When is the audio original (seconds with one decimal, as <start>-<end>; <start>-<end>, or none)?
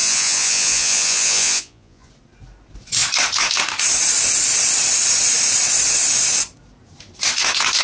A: 2.1-7.8